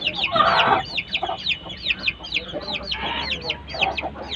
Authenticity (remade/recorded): recorded